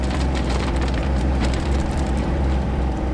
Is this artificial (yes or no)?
yes